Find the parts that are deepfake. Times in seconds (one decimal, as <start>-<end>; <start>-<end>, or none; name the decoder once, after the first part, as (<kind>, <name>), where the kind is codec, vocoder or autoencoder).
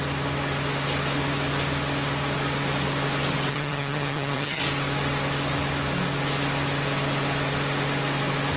3.5-4.6 (vocoder, HiFi-GAN)